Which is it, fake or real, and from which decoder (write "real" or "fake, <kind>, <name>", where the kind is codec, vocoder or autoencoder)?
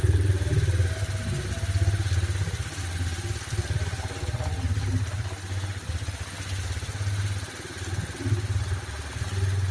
real